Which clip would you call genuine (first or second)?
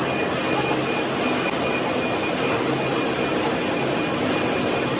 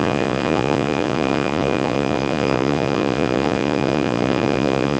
first